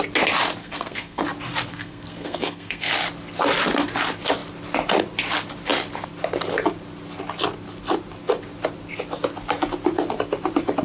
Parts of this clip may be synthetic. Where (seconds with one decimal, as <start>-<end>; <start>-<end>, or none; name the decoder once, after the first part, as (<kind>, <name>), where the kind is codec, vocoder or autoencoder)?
0.6-1.2 (codec, SNAC); 1.7-2.9